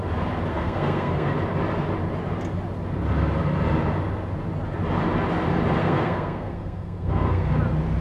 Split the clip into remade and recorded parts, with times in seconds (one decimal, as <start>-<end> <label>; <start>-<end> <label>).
0.0-0.5 recorded; 0.5-1.3 remade; 1.3-5.8 recorded; 5.8-7.5 remade; 7.5-8.0 recorded